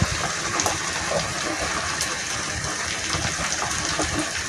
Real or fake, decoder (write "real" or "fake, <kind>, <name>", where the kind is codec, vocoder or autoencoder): real